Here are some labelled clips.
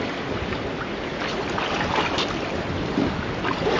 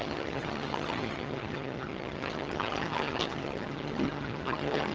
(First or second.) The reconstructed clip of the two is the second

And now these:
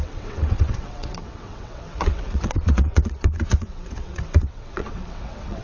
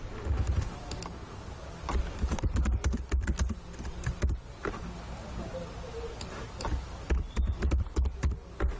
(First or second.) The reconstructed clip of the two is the first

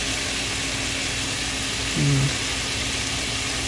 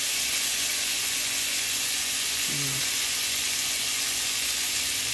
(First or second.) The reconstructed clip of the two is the second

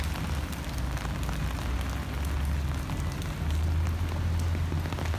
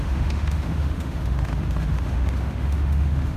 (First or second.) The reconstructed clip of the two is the second